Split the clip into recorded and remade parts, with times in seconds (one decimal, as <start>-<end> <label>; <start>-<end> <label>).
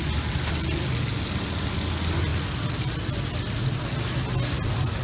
0.0-5.0 recorded